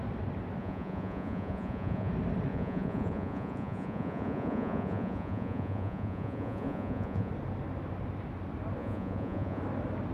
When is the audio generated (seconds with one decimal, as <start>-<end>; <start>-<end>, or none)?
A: 0.6-2.1; 2.5-7.3; 8.8-9.6